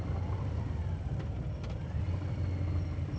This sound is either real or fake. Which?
real